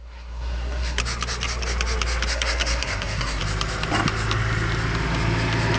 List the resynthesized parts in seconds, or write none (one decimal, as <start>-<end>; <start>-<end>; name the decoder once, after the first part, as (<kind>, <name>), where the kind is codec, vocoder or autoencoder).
0.0-1.0 (codec, SNAC); 2.3-3.4